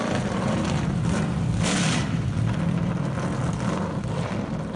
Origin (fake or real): fake